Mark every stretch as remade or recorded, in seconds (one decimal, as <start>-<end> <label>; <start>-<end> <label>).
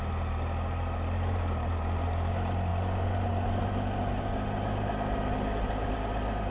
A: 0.0-6.5 recorded